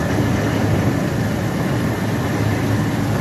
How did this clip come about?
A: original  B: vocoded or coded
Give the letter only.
A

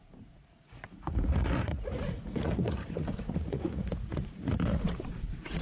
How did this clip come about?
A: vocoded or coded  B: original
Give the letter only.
A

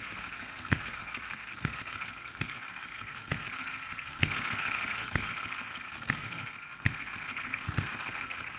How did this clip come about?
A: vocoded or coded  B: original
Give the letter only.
A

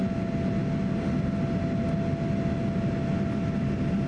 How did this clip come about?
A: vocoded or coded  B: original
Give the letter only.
B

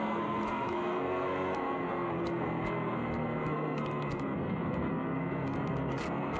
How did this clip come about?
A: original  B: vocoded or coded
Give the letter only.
B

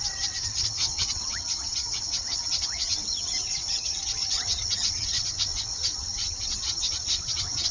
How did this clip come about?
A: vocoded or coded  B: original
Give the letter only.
A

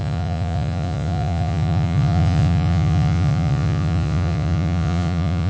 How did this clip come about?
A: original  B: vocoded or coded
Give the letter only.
B